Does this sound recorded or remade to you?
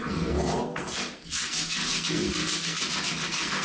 remade